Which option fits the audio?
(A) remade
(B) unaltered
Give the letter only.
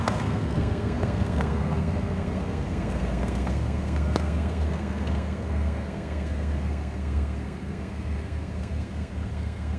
A